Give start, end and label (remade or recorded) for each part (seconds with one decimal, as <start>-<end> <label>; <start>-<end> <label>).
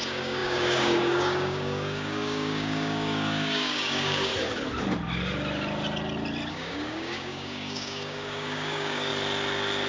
0.0-4.3 remade; 4.3-6.5 recorded; 6.5-9.1 remade; 9.1-9.9 recorded